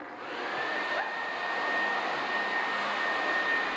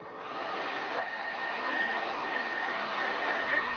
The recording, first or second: first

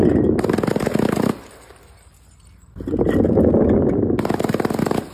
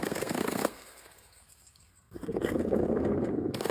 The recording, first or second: first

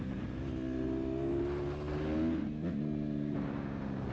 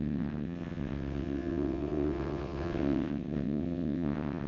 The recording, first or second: first